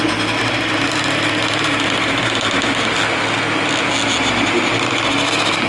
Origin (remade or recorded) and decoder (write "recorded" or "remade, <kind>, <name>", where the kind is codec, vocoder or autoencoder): recorded